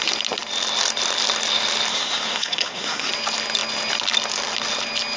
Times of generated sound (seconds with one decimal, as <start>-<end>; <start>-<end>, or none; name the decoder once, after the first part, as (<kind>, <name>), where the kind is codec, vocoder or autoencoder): 1.9-3.1 (codec, SNAC)